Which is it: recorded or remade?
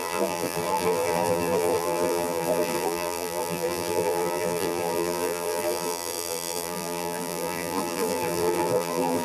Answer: remade